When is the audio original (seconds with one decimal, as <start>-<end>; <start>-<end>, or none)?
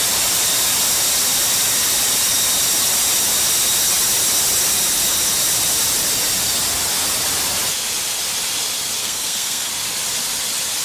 0.0-9.0; 9.7-10.8